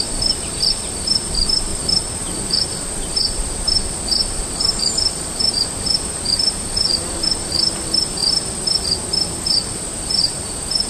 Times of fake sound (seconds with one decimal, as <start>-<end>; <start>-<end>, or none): 0.0-1.7; 2.4-8.2; 9.4-10.9